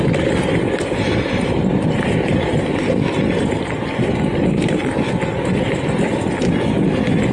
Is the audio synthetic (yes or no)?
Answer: no